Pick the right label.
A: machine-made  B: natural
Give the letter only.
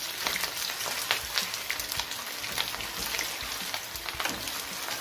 B